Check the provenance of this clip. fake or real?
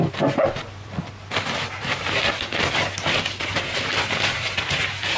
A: real